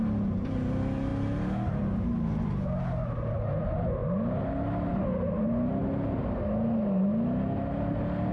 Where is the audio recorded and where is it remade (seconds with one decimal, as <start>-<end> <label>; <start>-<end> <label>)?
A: 0.0-8.3 recorded